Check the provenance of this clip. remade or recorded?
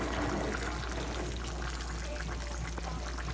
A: recorded